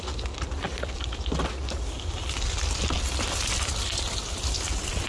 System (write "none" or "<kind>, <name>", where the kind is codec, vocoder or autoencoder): none